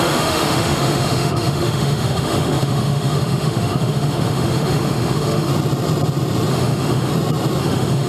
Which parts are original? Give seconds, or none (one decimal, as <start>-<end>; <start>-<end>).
5.5-6.5; 7.1-7.6